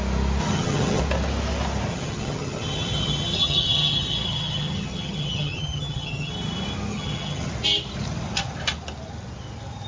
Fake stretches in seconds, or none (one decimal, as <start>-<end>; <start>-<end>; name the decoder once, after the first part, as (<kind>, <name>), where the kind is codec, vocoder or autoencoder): 0.4-1.0 (vocoder, HiFi-GAN); 1.9-6.3; 6.9-7.5